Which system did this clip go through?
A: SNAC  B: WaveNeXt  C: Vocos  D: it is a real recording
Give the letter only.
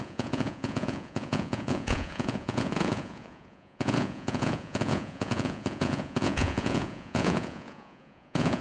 C